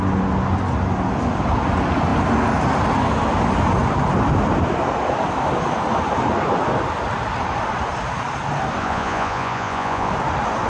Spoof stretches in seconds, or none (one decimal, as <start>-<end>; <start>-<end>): 8.8-10.1